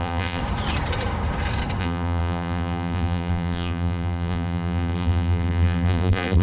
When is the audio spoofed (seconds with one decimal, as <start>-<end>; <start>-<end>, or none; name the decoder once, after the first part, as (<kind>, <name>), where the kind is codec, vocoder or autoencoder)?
0.0-0.4 (vocoder, BigVGAN v2); 1.8-6.4